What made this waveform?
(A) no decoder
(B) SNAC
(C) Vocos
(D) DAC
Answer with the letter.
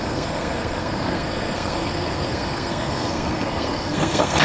B